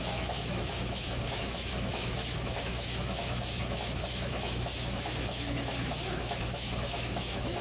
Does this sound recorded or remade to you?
remade